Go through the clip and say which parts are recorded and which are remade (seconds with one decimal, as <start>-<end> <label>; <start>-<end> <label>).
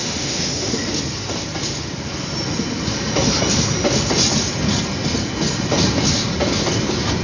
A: 0.0-0.8 remade; 0.8-7.2 recorded